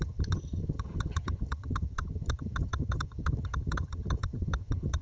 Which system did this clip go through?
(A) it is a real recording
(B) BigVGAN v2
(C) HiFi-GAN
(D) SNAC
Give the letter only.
C